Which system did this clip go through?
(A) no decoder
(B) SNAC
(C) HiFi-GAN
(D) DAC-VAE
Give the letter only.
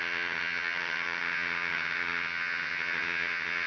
C